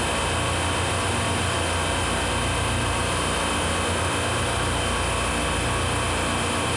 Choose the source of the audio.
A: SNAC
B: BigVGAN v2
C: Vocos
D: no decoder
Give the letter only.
D